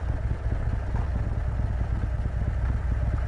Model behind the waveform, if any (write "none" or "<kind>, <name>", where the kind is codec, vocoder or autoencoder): none